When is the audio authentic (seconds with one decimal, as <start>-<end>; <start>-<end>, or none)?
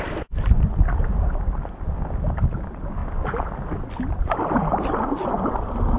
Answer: 0.0-6.0